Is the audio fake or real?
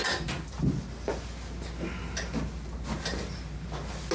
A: real